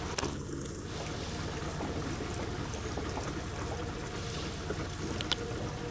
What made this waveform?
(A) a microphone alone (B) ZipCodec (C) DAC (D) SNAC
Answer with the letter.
A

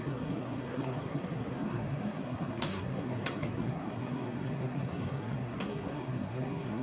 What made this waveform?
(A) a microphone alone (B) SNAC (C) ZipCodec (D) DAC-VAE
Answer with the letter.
B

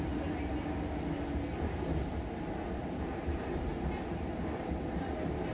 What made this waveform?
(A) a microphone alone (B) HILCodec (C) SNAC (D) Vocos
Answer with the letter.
A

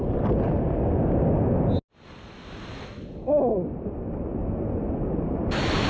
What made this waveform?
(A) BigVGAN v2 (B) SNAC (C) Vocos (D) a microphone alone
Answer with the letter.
D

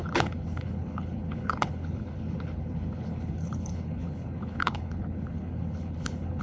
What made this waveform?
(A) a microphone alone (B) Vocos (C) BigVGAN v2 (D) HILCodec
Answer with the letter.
D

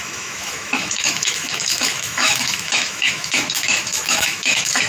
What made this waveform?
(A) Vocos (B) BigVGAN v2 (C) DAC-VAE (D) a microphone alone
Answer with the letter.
C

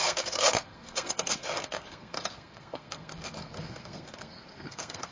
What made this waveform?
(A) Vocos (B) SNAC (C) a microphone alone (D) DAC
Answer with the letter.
B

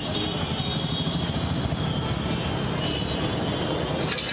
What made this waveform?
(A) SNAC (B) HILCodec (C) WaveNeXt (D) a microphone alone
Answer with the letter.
D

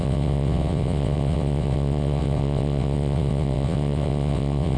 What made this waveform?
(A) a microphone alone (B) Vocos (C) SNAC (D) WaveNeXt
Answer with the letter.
D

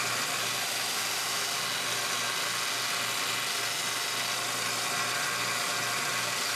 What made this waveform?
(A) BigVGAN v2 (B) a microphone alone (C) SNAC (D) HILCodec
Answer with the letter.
B